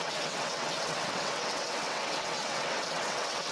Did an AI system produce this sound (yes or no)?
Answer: yes